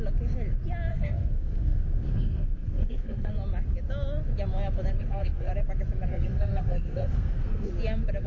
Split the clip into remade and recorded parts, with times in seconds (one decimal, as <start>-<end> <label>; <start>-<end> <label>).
0.0-0.9 recorded; 0.9-3.3 remade; 3.3-5.0 recorded; 5.0-5.5 remade; 5.5-6.1 recorded; 6.1-7.7 remade; 7.7-8.3 recorded